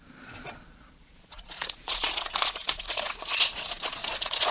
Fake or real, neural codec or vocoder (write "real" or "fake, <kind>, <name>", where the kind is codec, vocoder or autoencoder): fake, vocoder, Vocos